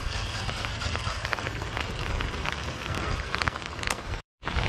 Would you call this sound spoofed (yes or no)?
yes